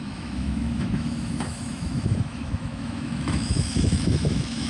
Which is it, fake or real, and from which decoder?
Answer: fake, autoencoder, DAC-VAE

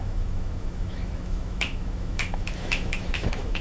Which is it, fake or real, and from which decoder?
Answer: fake, autoencoder, DAC-VAE